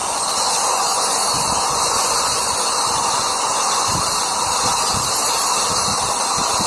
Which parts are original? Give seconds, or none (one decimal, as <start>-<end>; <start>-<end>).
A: 4.0-6.7